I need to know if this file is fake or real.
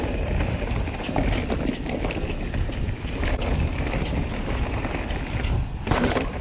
real